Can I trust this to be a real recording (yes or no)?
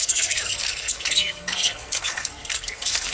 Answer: no